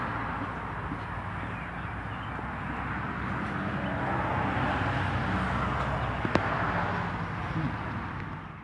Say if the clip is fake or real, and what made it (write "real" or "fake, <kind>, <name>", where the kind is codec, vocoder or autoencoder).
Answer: real